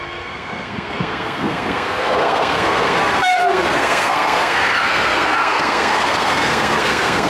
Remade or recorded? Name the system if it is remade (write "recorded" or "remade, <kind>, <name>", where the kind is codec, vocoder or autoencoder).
remade, codec, SNAC